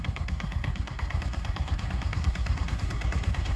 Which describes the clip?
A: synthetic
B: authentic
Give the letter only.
A